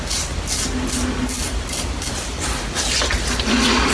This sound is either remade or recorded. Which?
recorded